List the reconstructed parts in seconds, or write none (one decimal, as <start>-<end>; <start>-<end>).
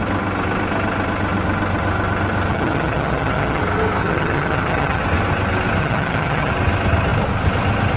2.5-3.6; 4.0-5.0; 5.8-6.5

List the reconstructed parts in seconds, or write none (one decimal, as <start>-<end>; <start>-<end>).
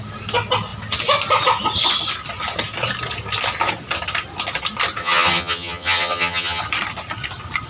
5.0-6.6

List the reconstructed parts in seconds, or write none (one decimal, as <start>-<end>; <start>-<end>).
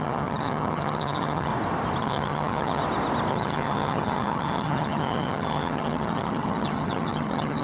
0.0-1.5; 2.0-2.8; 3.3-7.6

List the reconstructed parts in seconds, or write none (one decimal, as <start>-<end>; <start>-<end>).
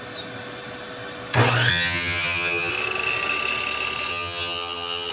1.7-2.7; 4.1-5.1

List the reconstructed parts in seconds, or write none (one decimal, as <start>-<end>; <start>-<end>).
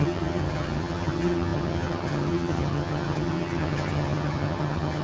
0.0-5.0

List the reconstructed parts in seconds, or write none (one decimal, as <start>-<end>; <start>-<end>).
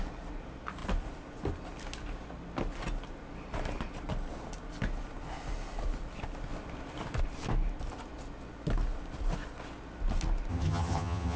10.5-11.4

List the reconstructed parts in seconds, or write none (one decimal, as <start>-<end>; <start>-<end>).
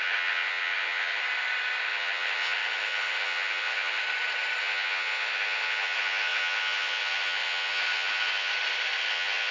0.0-1.2; 1.8-4.0; 4.6-8.5; 9.0-9.5